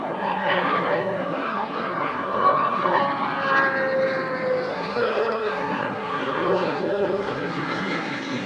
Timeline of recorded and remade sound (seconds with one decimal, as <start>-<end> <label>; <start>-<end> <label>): 0.0-3.0 remade; 3.0-4.7 recorded; 4.7-8.5 remade